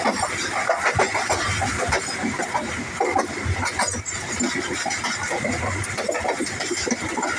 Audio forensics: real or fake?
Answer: real